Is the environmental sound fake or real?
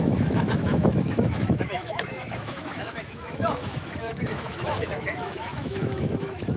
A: fake